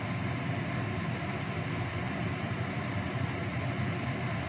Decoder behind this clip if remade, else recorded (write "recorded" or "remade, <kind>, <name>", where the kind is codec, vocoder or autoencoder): recorded